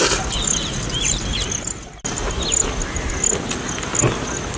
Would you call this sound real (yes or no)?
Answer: yes